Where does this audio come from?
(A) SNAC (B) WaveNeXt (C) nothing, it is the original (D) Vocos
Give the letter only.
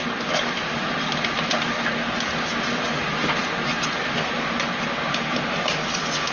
C